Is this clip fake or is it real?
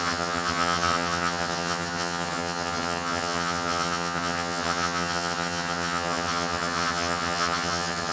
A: fake